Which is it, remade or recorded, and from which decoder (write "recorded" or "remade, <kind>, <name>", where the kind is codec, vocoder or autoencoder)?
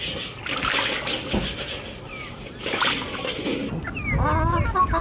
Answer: recorded